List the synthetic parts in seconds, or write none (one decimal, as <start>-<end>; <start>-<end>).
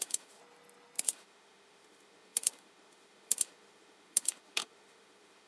0.0-0.4; 1.0-5.5